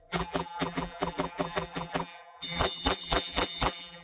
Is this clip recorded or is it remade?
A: remade